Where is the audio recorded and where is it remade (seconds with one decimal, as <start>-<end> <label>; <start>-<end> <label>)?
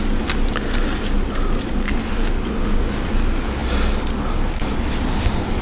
0.0-5.6 recorded